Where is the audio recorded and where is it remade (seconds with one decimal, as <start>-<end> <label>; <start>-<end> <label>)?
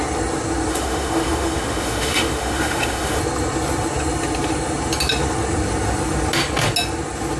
0.0-0.7 recorded; 0.7-3.2 remade; 3.2-7.4 recorded